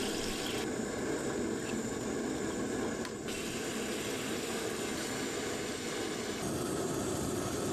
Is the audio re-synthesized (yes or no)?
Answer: no